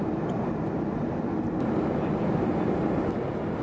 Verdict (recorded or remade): recorded